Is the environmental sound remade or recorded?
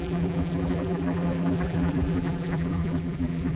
remade